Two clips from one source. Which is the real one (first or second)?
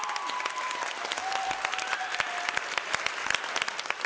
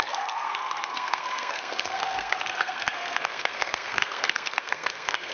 first